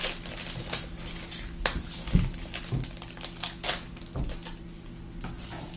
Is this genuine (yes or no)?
yes